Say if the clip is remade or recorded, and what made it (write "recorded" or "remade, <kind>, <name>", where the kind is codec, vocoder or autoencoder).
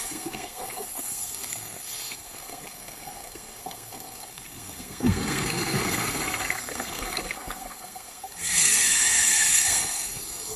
remade, codec, SNAC